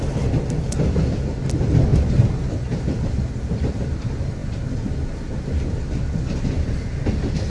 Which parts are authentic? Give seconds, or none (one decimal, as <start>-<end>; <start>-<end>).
0.0-7.5